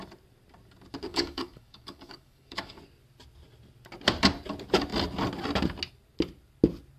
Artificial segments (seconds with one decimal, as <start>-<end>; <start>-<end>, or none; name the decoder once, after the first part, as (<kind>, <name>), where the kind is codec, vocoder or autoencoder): 1.1-2.8 (codec, DAC)